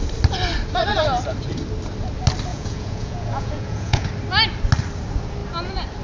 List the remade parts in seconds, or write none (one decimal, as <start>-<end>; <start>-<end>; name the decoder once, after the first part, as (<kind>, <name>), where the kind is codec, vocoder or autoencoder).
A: 2.5-4.1 (vocoder, Vocos)